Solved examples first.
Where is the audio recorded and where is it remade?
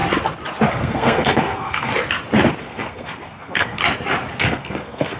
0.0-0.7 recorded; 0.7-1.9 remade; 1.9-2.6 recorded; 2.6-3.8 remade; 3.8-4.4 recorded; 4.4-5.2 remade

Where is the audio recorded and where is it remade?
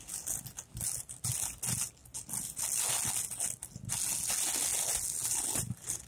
0.0-6.1 recorded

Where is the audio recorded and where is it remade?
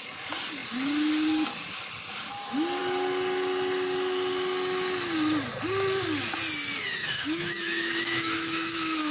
0.0-7.0 recorded; 7.0-9.1 remade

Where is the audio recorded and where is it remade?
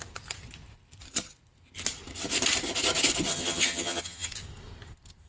0.0-3.3 recorded; 3.3-4.3 remade; 4.3-5.3 recorded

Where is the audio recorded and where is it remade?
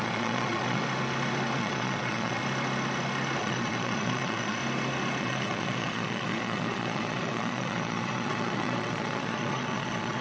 0.0-0.8 remade; 0.8-1.6 recorded; 1.6-2.4 remade; 2.4-3.4 recorded; 3.4-4.6 remade; 4.6-5.2 recorded; 5.2-10.2 remade